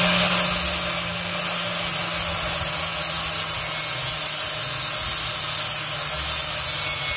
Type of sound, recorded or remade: recorded